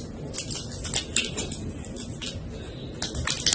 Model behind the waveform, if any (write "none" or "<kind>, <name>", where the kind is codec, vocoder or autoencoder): none